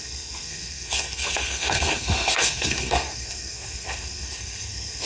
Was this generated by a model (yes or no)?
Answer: yes